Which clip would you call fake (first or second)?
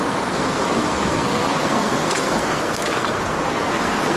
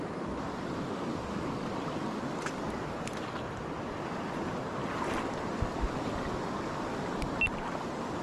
first